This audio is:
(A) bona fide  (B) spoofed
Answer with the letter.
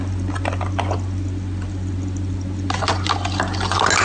A